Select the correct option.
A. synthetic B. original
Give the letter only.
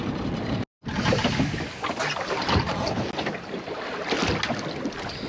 B